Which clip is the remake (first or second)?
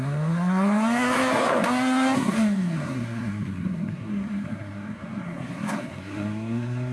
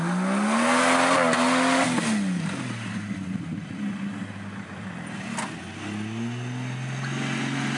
first